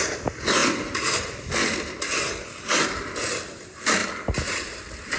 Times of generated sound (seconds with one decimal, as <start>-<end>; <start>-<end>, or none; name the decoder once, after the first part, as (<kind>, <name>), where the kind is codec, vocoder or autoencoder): 4.0-4.8 (vocoder, BigVGAN v2)